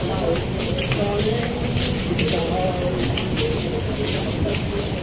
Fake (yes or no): no